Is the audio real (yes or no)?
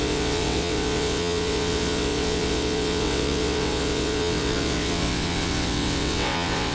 no